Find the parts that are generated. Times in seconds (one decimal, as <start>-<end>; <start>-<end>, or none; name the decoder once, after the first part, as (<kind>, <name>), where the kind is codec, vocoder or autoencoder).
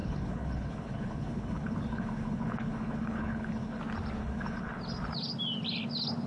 0.0-3.8 (codec, HILCodec); 4.2-4.8